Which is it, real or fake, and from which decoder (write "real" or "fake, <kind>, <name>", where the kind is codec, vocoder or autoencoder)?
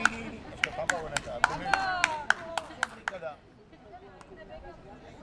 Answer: real